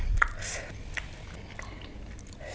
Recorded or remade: recorded